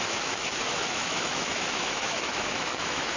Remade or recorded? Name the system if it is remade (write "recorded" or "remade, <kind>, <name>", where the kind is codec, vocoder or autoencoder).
remade, autoencoder, DAC-VAE